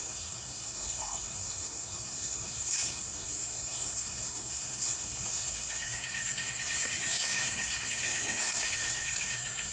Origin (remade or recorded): remade